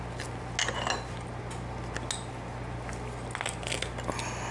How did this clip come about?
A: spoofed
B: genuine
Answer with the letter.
B